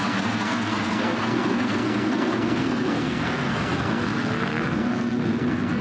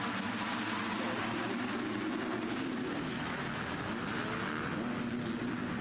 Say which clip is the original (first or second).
second